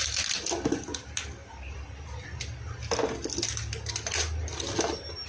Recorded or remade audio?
recorded